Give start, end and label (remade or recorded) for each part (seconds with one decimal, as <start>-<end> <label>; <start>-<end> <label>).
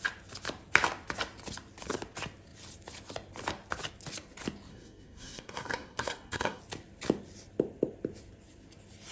0.0-4.7 recorded; 4.7-6.6 remade; 6.6-9.1 recorded